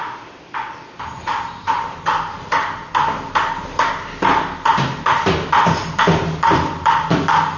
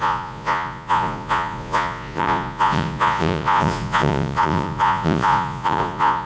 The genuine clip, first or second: first